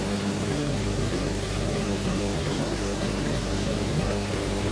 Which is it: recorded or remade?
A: remade